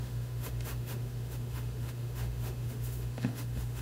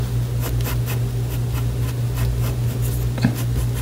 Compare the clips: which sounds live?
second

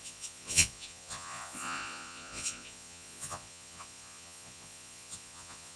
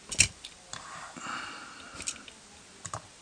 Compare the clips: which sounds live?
second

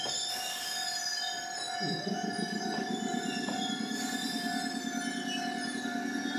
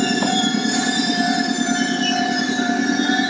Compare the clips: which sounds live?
first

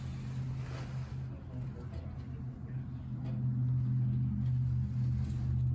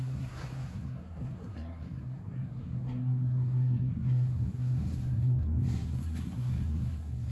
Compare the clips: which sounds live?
first